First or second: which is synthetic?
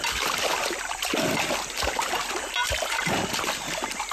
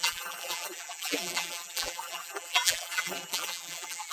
second